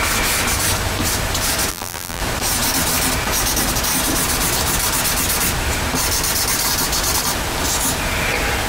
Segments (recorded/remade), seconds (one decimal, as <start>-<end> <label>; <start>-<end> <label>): 0.0-1.7 recorded; 1.7-2.2 remade; 2.2-8.7 recorded

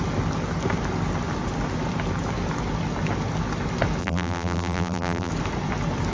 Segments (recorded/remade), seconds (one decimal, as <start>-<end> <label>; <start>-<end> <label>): 0.0-4.0 recorded; 4.0-5.3 remade; 5.3-6.1 recorded

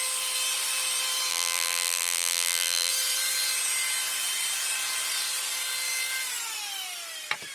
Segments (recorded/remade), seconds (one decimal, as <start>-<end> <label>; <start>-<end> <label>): 0.0-1.3 recorded; 1.3-2.9 remade; 2.9-7.5 recorded

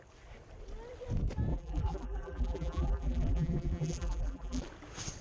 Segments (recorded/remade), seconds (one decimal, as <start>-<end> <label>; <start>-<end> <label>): 0.0-1.5 recorded; 1.5-4.6 remade; 4.6-5.2 recorded

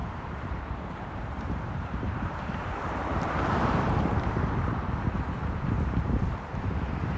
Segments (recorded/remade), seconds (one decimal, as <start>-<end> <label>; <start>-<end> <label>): 0.0-7.2 remade

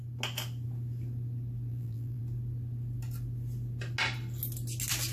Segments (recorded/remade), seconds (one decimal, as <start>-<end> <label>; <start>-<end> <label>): 0.0-1.7 recorded; 1.7-2.2 remade; 2.2-5.1 recorded

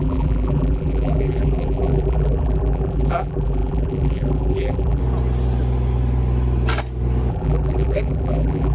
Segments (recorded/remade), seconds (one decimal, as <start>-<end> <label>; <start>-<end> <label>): 0.0-5.0 remade; 5.0-7.3 recorded; 7.3-8.7 remade